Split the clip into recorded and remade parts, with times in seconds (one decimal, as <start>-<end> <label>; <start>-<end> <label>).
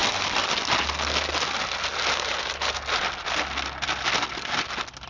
0.0-5.1 recorded